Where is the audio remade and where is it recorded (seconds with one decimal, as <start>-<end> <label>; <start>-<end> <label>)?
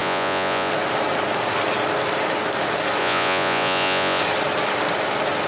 0.0-0.7 remade; 0.7-3.0 recorded; 3.0-4.2 remade; 4.2-5.5 recorded